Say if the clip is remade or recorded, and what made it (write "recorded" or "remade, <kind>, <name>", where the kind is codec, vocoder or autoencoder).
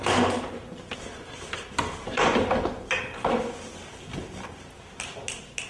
recorded